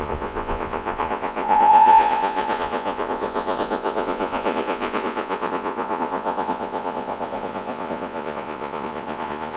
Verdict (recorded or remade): remade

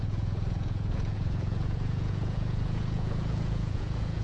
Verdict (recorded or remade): remade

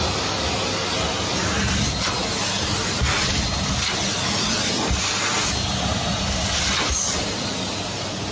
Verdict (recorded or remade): recorded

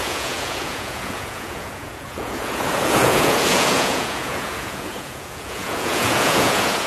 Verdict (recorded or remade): remade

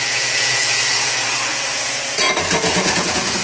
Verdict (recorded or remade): remade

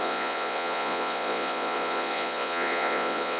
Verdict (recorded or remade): remade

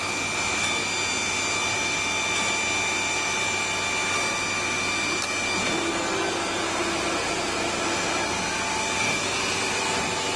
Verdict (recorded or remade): recorded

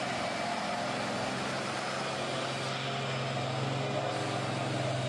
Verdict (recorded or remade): recorded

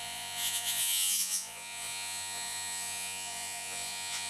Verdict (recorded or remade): remade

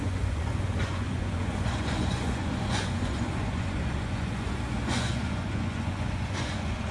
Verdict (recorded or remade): remade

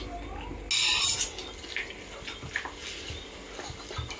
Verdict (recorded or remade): recorded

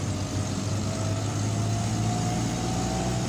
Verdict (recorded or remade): recorded